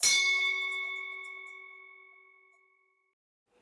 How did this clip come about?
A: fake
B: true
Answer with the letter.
B